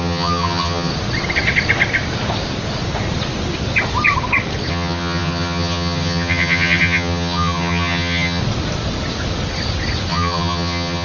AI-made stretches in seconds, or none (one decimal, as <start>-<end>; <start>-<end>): 0.0-0.9; 4.7-8.4; 10.1-11.0